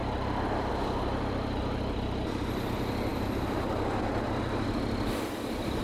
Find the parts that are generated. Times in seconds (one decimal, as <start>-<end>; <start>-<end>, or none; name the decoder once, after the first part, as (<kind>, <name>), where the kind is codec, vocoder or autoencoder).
none